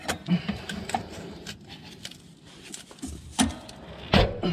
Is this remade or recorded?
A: remade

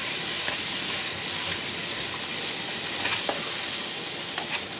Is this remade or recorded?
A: recorded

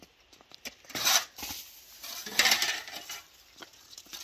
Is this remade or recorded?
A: recorded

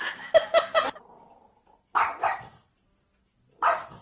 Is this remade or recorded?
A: recorded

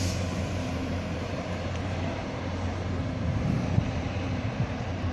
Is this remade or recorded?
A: remade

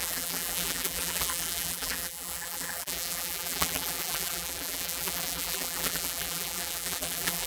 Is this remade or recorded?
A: remade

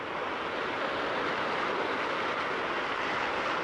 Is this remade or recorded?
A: recorded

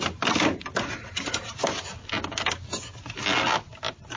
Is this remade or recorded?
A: recorded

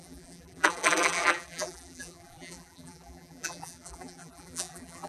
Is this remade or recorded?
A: remade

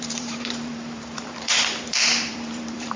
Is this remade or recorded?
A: remade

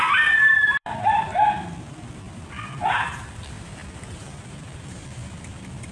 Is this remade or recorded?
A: remade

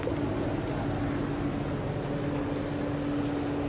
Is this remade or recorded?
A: recorded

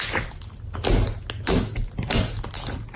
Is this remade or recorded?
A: recorded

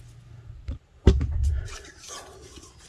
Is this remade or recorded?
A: recorded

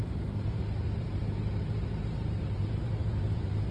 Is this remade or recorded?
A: remade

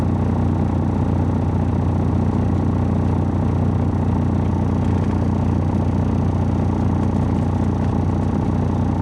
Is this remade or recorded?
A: recorded